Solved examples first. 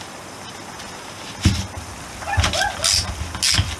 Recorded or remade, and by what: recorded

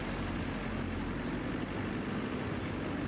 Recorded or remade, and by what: recorded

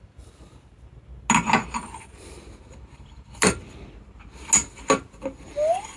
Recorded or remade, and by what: recorded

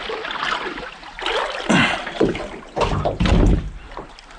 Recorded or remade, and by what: recorded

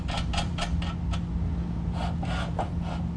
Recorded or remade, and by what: recorded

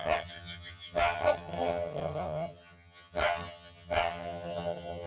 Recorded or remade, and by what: remade, vocoder, HiFi-GAN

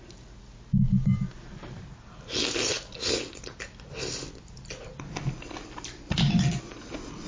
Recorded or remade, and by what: recorded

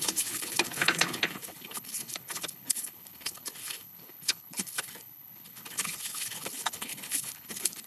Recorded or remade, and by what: remade, codec, HILCodec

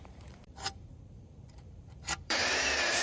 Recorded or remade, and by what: remade, vocoder, BigVGAN v2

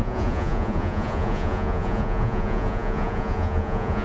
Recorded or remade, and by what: remade, vocoder, Vocos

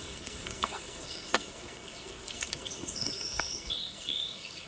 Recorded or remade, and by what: remade, codec, SNAC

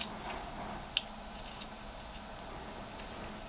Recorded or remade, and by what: recorded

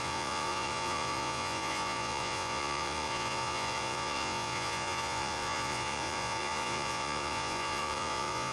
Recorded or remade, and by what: remade, vocoder, Vocos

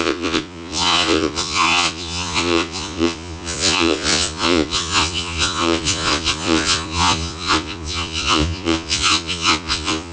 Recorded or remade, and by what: remade, vocoder, Vocos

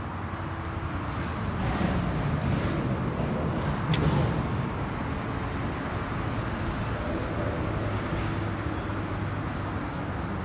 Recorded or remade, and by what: recorded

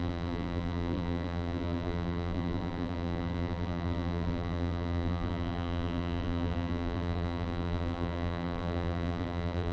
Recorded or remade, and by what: remade, vocoder, BigVGAN v2